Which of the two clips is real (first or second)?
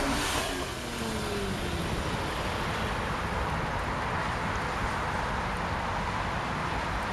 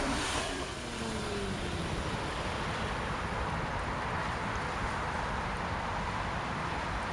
first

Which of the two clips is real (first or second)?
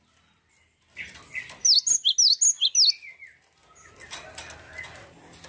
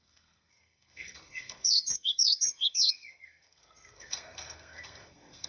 first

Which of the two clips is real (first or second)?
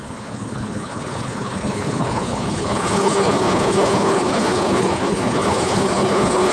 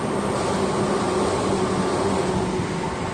second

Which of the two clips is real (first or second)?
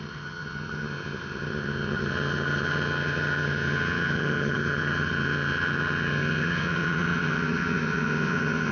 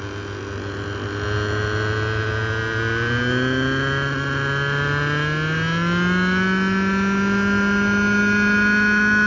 second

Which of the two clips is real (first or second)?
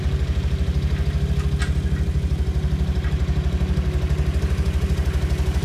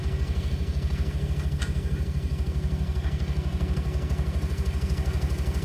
first